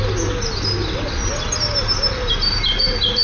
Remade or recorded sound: recorded